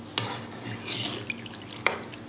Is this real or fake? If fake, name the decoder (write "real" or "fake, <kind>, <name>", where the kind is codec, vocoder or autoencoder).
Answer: real